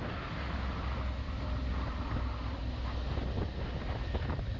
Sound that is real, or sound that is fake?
fake